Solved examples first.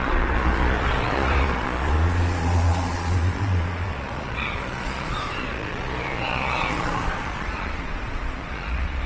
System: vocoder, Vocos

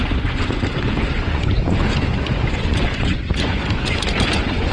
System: vocoder, Vocos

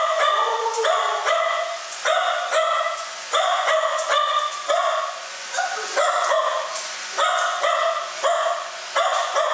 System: vocoder, Vocos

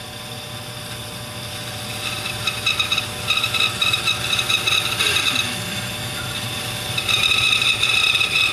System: none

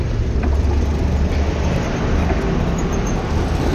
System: none